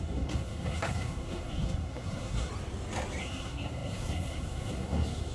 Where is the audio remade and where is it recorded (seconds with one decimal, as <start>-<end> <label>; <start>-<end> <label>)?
0.0-2.5 remade; 2.5-3.2 recorded; 3.2-5.3 remade